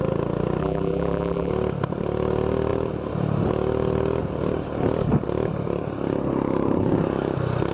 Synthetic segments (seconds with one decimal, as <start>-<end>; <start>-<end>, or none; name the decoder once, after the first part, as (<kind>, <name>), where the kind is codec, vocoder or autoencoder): 0.6-1.5 (vocoder, BigVGAN v2)

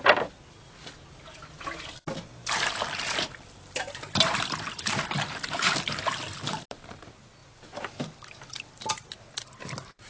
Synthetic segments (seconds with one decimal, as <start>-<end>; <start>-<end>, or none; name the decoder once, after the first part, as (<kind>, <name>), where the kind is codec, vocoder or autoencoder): 2.3-6.0 (vocoder, BigVGAN v2)

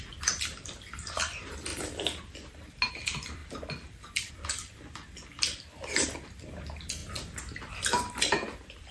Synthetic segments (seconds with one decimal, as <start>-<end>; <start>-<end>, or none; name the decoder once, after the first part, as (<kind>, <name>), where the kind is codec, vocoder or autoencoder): 0.0-1.7 (vocoder, BigVGAN v2); 2.9-7.0; 7.7-8.9

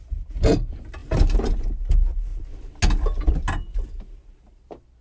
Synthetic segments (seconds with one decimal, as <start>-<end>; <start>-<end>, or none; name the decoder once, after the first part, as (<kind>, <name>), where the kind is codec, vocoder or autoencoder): none